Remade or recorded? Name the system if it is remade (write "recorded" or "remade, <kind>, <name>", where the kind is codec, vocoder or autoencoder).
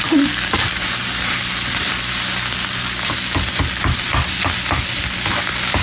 recorded